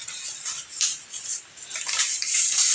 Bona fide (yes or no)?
yes